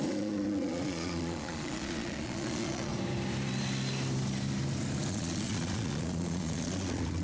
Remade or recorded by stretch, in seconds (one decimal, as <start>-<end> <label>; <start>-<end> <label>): 0.0-2.9 remade; 2.9-5.1 recorded; 5.1-7.2 remade